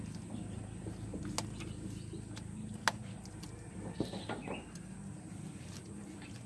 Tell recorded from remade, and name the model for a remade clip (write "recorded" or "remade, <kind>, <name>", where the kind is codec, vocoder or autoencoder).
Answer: recorded